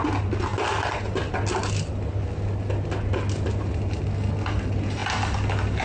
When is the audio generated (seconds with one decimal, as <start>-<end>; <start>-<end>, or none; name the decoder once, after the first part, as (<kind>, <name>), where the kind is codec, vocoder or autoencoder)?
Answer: none

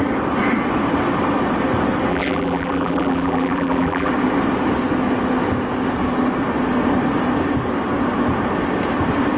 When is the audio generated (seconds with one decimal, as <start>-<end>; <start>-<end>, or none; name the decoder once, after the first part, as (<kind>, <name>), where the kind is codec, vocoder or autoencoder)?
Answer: 2.1-4.1 (vocoder, BigVGAN v2)

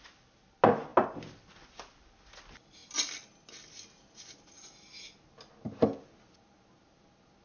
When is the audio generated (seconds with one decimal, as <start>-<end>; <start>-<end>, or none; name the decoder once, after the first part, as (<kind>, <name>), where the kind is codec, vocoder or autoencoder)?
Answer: none

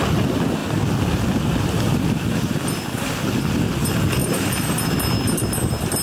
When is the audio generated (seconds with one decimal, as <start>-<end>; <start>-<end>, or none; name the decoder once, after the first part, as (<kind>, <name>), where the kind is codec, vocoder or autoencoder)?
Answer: 4.2-4.8 (vocoder, BigVGAN v2)

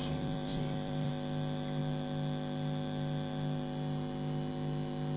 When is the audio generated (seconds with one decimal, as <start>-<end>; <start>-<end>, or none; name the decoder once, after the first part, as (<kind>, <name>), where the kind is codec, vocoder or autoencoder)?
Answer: 0.0-1.1 (vocoder, BigVGAN v2)

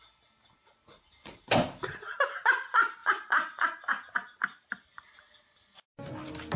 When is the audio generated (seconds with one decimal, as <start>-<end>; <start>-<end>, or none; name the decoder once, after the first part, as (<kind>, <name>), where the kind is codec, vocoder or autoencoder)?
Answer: 3.0-5.1 (vocoder, BigVGAN v2)

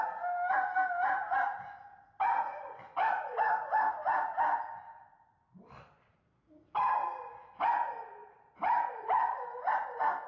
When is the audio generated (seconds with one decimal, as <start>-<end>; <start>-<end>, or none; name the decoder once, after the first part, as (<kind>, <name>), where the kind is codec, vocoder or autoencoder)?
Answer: 2.5-6.9 (vocoder, BigVGAN v2); 8.2-9.0